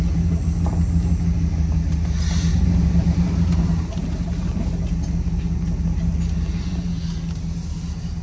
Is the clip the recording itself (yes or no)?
yes